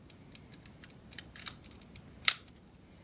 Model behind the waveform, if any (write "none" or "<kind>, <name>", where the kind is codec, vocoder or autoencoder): vocoder, BigVGAN v2